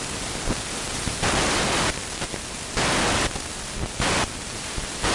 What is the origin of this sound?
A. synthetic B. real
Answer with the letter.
B